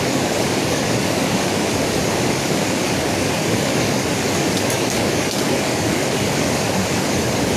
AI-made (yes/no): yes